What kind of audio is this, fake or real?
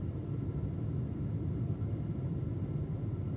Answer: real